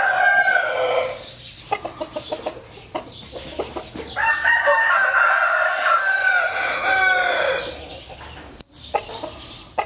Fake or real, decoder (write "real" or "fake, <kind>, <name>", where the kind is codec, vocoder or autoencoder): real